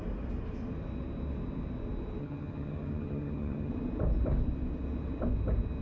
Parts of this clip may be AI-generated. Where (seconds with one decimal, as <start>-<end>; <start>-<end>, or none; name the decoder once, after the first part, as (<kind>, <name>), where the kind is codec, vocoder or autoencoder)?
2.2-3.7 (vocoder, HiFi-GAN)